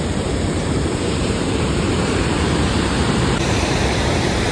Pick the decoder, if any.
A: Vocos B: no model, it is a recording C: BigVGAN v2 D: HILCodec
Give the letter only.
C